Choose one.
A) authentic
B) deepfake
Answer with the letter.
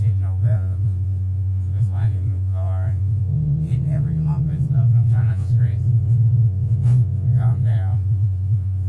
B